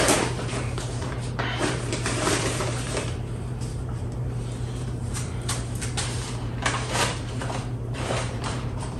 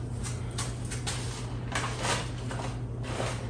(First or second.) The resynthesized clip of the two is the first